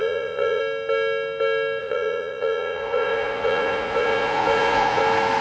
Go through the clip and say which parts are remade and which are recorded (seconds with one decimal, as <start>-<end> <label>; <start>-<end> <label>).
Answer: 0.0-0.6 remade; 0.6-1.8 recorded; 1.8-5.0 remade; 5.0-5.4 recorded